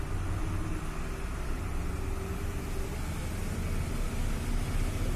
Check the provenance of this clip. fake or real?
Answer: real